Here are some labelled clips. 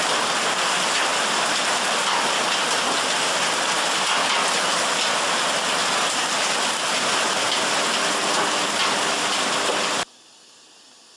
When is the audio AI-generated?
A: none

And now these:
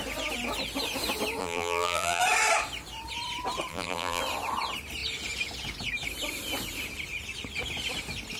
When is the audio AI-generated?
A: 1.4-2.2 (vocoder, BigVGAN v2); 3.7-4.2

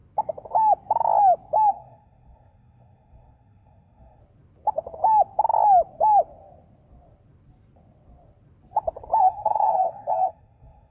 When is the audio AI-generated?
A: 1.7-4.2 (codec, SNAC); 9.2-10.9

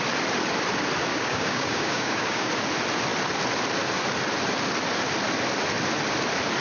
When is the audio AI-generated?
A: 1.1-2.5 (codec, DAC)

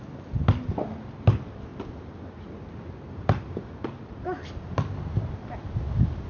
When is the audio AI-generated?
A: none

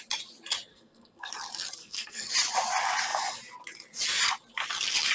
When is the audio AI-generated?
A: 0.7-1.3 (codec, SNAC); 1.8-2.3